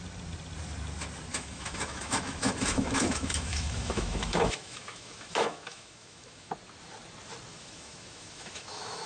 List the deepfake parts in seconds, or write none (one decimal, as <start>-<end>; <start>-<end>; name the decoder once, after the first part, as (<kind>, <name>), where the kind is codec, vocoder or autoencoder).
1.3-6.5 (autoencoder, DAC-VAE); 7.5-9.1